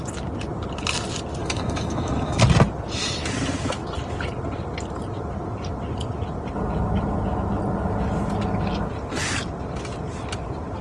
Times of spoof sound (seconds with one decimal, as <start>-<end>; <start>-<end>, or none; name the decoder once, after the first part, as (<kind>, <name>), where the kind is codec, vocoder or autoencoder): 1.4-2.4 (codec, DAC)